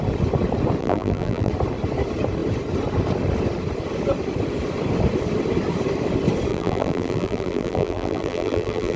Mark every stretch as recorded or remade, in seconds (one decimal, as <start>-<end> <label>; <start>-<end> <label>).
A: 0.0-0.8 recorded; 0.8-1.5 remade; 1.5-6.5 recorded; 6.5-9.0 remade